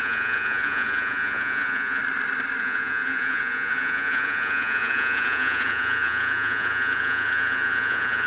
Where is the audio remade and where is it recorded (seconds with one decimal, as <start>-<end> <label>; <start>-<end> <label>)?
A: 0.0-2.0 remade; 2.0-2.6 recorded; 2.6-8.3 remade